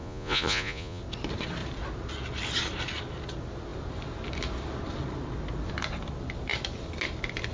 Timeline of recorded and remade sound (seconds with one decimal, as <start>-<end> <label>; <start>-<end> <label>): 0.0-1.0 remade; 1.0-7.5 recorded